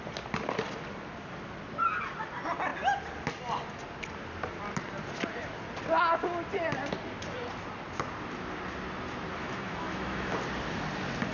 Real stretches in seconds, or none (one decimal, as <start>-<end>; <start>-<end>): 0.0-9.4; 10.4-11.3